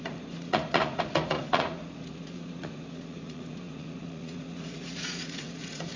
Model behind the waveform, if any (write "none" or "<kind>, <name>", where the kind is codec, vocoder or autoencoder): vocoder, Vocos